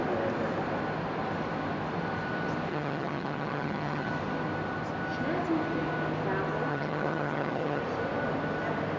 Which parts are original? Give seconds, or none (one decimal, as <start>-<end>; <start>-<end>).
0.0-2.7; 4.1-6.7; 7.8-9.0